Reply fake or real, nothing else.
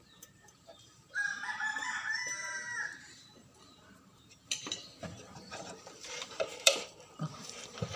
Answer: fake